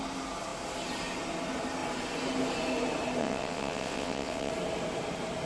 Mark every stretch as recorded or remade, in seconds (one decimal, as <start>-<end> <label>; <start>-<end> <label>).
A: 0.0-3.2 recorded; 3.2-4.5 remade; 4.5-5.5 recorded